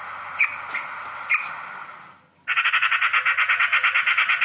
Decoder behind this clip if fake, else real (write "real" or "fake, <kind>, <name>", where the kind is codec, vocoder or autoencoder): real